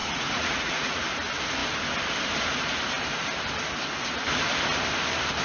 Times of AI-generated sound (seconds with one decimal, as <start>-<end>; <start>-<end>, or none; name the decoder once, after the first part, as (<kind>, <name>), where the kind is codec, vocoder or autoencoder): 0.0-1.0 (vocoder, Vocos)